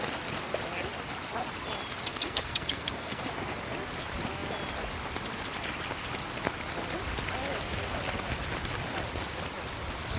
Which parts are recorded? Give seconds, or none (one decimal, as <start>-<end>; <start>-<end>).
0.0-2.1; 3.2-10.2